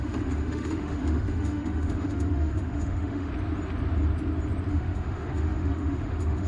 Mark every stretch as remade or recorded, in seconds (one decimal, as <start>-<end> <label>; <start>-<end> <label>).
0.0-3.3 remade; 3.3-4.7 recorded; 4.7-6.5 remade